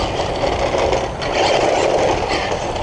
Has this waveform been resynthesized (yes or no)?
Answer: no